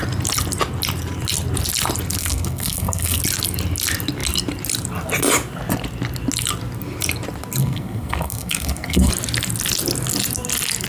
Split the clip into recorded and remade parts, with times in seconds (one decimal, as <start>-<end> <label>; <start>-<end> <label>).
0.0-2.2 recorded; 2.2-3.2 remade; 3.2-7.6 recorded; 7.6-9.1 remade; 9.1-10.9 recorded